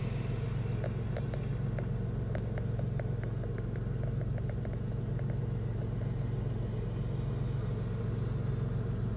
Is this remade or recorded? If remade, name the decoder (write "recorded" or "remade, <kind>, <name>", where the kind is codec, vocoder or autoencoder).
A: recorded